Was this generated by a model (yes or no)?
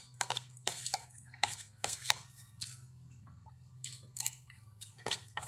yes